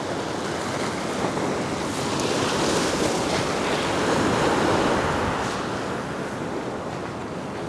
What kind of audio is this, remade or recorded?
recorded